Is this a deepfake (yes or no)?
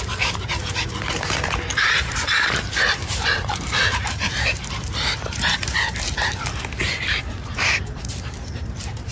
yes